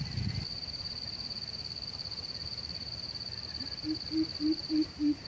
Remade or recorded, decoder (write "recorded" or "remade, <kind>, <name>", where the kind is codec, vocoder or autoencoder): remade, vocoder, BigVGAN v2